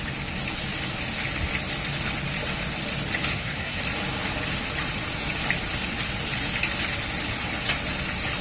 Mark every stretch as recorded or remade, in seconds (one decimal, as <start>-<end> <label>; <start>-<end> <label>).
0.0-3.3 recorded; 3.3-3.8 remade; 3.8-8.4 recorded